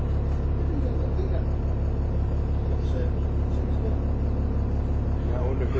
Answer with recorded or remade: recorded